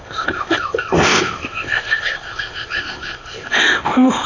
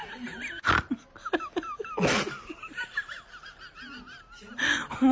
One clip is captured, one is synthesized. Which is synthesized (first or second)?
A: first